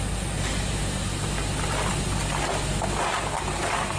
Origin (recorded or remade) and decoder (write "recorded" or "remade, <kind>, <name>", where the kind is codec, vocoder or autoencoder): recorded